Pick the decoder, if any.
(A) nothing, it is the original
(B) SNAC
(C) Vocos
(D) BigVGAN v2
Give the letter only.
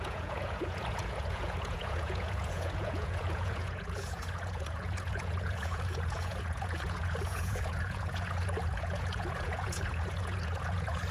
C